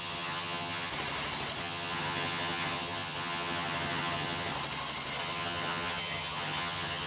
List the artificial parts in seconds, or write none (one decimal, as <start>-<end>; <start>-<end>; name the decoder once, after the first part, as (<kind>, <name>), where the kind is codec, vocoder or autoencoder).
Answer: 0.0-0.9 (vocoder, HiFi-GAN); 1.6-4.5; 5.2-7.1